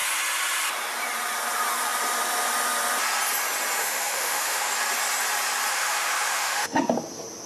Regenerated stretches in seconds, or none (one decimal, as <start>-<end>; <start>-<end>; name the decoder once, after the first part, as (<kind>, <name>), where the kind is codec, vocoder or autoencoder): 3.8-4.7 (autoencoder, DAC-VAE); 5.7-6.8